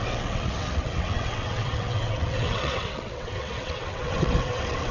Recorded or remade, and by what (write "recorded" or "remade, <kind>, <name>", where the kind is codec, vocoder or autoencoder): remade, vocoder, WaveNeXt